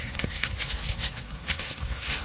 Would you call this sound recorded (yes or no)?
no